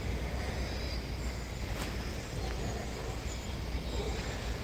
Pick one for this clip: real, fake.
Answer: real